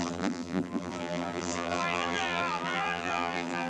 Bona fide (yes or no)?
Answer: no